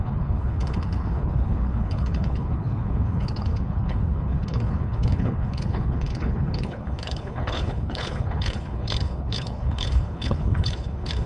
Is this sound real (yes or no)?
no